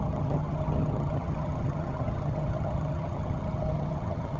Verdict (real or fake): fake